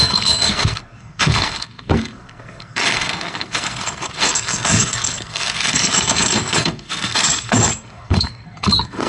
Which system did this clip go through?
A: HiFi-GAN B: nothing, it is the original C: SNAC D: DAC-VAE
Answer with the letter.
C